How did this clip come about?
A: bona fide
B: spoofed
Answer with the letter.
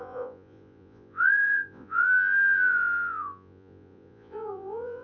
B